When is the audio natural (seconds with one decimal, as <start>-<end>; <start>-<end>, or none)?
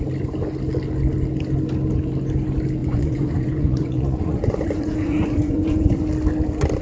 0.0-2.8; 6.0-6.8